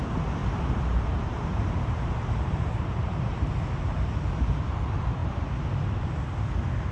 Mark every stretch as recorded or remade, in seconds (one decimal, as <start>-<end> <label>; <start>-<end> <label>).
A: 0.0-0.4 recorded; 0.4-3.4 remade; 3.4-6.9 recorded